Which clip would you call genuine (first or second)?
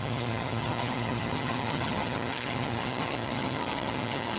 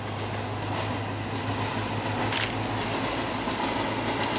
second